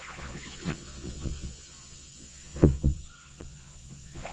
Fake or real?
fake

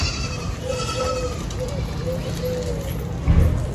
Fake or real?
real